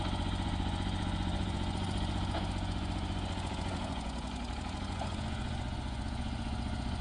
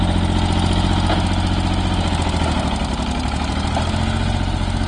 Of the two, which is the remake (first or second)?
first